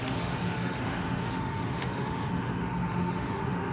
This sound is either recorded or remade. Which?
remade